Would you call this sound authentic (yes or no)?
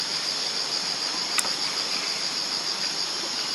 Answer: yes